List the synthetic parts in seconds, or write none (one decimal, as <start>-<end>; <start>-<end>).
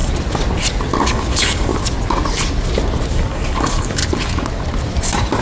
1.0-1.7; 3.1-4.0